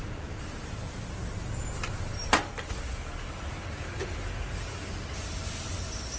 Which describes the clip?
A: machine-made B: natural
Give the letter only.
B